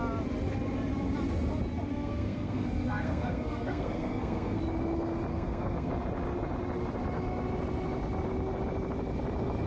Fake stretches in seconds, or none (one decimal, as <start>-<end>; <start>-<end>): 1.9-4.6; 5.3-5.9